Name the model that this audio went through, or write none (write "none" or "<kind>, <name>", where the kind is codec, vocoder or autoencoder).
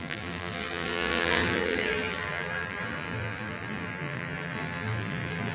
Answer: vocoder, BigVGAN v2